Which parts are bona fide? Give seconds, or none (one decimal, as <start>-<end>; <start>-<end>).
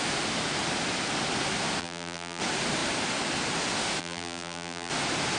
0.0-1.8; 2.4-4.0; 4.9-5.4